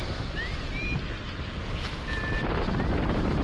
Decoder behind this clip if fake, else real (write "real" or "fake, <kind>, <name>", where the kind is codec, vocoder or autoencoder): real